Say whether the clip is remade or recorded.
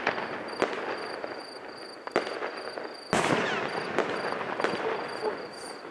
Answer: recorded